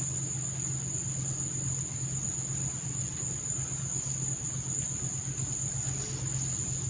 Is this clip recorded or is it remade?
recorded